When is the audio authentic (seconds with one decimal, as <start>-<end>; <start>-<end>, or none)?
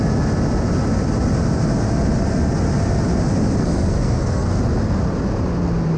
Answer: 0.0-3.6; 4.5-6.0